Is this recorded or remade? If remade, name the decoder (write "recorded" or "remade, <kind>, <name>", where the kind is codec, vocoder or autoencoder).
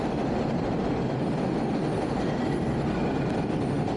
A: recorded